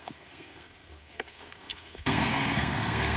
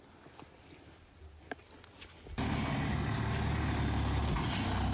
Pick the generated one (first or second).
first